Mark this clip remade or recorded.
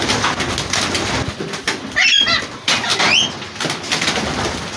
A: recorded